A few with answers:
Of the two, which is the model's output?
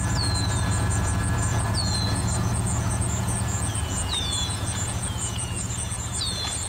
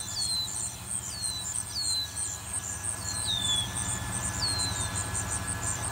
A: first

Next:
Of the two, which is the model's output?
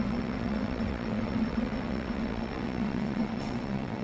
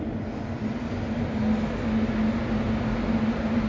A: first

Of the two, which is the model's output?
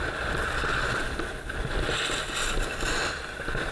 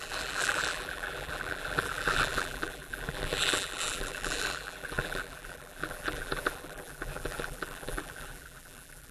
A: second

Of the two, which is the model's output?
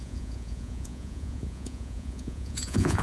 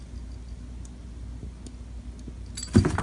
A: first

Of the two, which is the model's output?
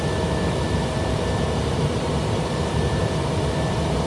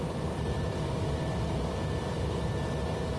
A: first